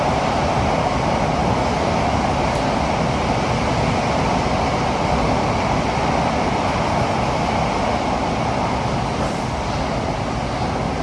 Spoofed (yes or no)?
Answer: no